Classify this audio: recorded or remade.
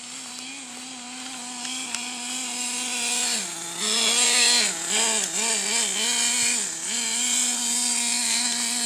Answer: recorded